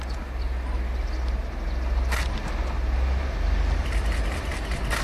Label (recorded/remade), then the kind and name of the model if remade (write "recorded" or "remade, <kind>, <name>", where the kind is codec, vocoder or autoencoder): recorded